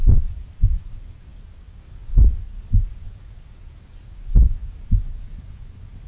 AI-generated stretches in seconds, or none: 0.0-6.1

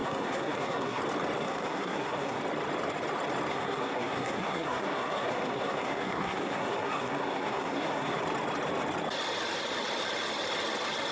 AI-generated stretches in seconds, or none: 0.0-1.0; 1.4-2.4; 3.5-8.2

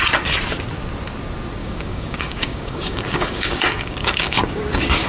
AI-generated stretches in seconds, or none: 1.6-5.1

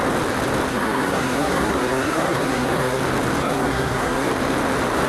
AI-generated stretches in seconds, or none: 0.7-3.0; 3.4-4.3

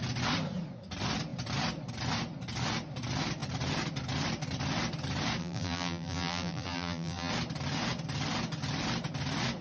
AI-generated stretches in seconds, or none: 5.4-7.3

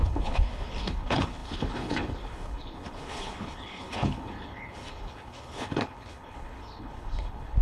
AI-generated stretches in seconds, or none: 0.0-7.6